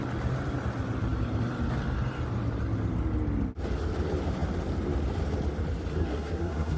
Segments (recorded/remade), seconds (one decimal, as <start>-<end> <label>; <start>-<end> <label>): 0.0-6.0 recorded; 6.0-6.8 remade